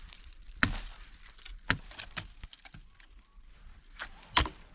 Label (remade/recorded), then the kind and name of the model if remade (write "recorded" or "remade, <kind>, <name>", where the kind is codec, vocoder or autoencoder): recorded